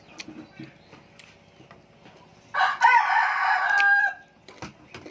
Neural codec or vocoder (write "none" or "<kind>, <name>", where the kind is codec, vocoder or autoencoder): none